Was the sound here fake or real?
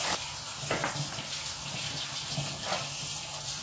real